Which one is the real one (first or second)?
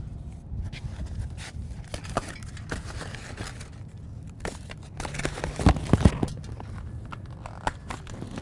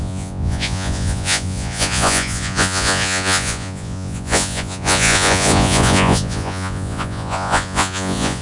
first